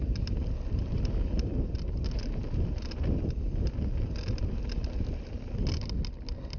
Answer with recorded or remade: recorded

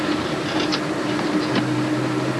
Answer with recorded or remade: recorded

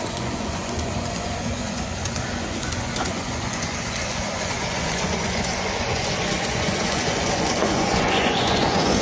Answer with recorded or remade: remade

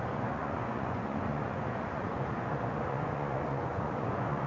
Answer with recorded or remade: remade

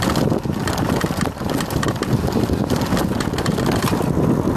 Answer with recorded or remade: recorded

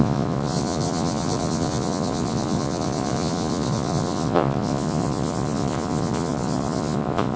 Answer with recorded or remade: remade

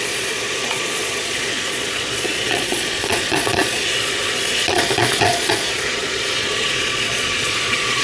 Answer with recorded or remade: remade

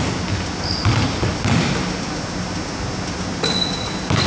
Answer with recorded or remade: recorded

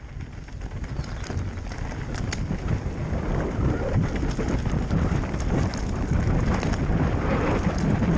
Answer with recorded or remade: recorded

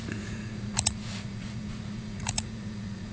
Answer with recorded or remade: remade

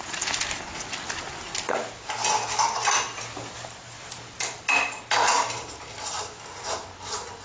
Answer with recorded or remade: recorded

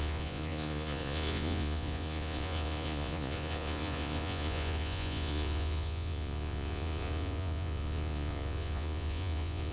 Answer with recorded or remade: remade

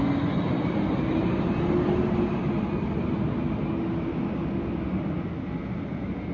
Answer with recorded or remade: recorded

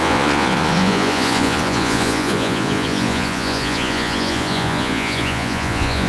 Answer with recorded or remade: remade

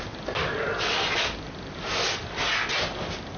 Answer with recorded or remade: recorded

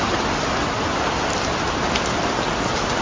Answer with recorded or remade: recorded